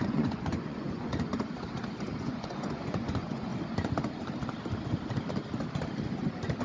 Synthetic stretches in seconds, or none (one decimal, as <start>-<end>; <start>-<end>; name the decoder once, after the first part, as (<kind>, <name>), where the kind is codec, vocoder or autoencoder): 0.0-1.3 (vocoder, Vocos); 2.2-3.5